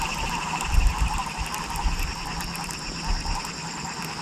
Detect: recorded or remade remade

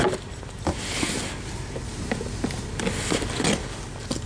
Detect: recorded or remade recorded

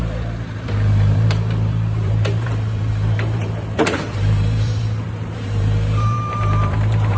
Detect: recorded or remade remade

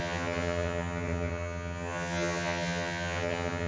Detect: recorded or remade remade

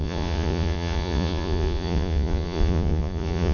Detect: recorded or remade remade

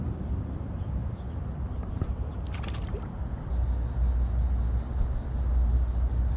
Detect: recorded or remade recorded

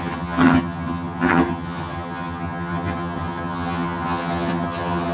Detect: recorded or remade remade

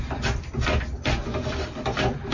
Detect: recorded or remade recorded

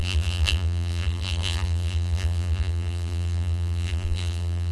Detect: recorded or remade remade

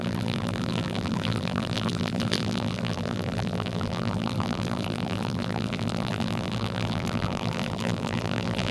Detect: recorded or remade remade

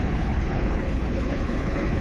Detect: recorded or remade remade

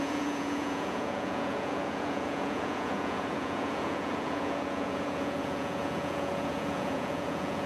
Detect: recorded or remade remade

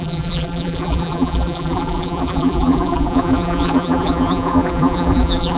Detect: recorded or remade remade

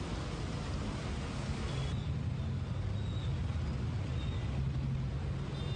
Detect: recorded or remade recorded